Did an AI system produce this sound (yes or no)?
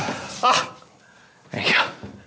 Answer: no